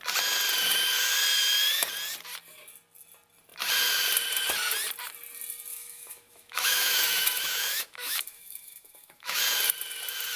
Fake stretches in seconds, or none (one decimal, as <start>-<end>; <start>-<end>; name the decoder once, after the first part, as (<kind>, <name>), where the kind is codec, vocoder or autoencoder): 5.7-9.4 (autoencoder, DAC-VAE)